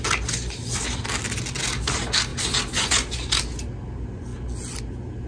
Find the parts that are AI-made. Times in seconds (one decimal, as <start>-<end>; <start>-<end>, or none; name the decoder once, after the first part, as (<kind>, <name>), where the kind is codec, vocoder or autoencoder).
none